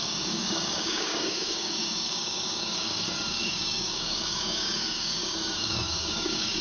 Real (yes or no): no